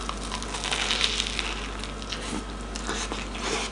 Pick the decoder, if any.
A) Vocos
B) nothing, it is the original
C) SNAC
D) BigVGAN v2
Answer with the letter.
B